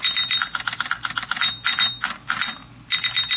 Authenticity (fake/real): real